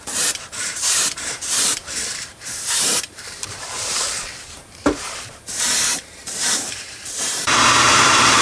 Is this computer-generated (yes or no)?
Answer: yes